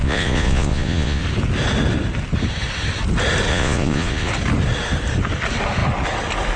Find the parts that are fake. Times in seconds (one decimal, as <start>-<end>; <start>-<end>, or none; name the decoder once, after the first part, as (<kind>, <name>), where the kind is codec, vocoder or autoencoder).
0.0-1.2 (vocoder, Vocos); 3.5-4.3